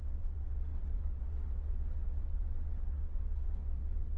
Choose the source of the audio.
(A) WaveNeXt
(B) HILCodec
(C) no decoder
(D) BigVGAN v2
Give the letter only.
A